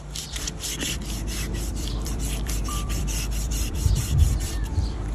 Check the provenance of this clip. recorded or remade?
remade